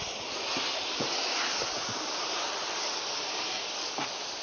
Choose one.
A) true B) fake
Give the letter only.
A